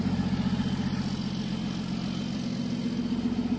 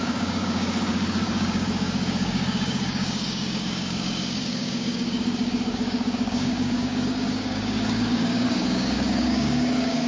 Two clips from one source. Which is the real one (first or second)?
first